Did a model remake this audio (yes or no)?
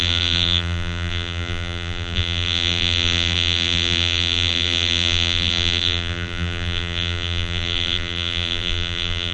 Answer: yes